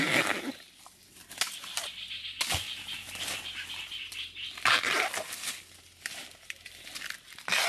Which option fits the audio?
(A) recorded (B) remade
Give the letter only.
A